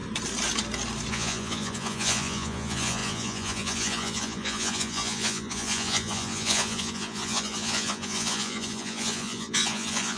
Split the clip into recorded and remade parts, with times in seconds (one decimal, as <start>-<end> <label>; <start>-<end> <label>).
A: 0.0-1.1 recorded; 1.1-10.2 remade